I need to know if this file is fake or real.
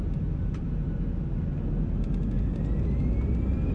real